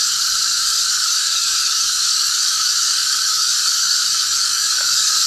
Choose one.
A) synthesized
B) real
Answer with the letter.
A